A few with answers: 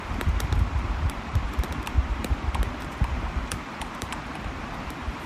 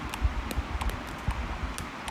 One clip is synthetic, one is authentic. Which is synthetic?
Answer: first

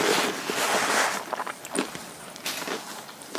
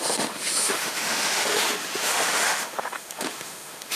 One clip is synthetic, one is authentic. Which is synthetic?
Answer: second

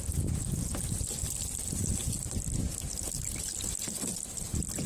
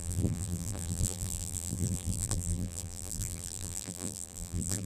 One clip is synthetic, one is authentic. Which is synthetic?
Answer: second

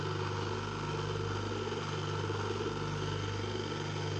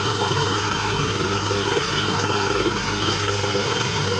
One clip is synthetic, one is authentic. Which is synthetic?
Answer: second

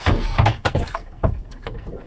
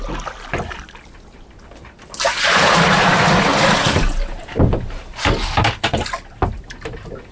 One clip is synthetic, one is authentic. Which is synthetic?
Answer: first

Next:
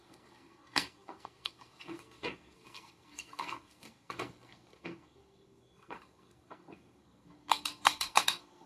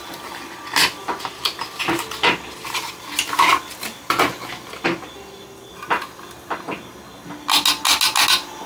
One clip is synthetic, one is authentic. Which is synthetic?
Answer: first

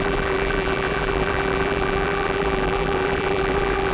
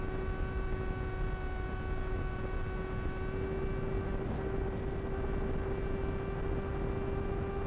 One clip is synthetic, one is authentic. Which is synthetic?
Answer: first